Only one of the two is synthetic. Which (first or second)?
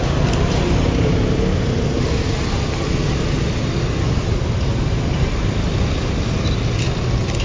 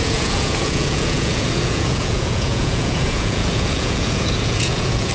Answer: second